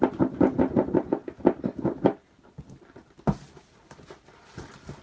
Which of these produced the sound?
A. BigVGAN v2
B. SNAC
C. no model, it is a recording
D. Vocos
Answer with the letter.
C